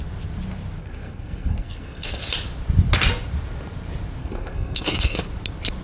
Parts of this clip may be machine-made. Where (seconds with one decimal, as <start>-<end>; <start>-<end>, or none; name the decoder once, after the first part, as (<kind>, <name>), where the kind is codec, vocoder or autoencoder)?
0.8-2.2 (codec, SNAC); 4.2-5.3